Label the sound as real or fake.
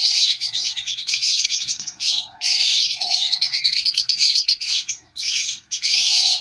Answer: fake